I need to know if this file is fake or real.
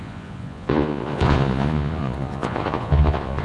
fake